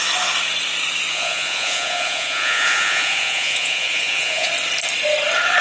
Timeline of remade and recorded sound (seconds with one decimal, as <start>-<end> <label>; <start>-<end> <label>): 0.0-1.1 recorded; 1.1-4.5 remade; 4.5-5.6 recorded